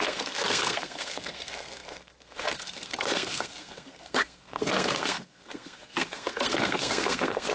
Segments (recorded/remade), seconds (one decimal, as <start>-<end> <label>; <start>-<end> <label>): 0.0-7.5 remade